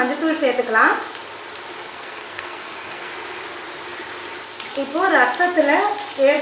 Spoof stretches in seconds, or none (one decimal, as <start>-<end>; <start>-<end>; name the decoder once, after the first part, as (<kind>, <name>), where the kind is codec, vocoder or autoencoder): 1.8-3.1 (codec, SNAC)